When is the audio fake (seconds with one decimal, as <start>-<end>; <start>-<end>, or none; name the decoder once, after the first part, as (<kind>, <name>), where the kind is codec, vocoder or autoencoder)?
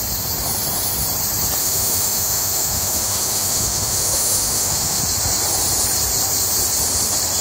1.6-5.0 (autoencoder, DAC-VAE)